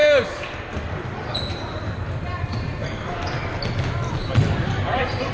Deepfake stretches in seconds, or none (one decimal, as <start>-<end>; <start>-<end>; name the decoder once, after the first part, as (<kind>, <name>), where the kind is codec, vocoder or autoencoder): 0.0-3.4 (vocoder, BigVGAN v2); 4.6-5.3